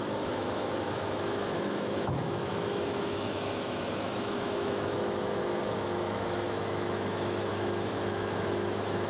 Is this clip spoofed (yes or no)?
yes